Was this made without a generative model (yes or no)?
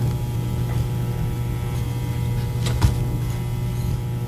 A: yes